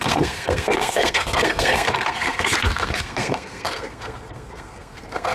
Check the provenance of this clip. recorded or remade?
remade